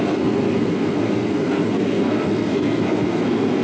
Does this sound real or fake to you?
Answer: fake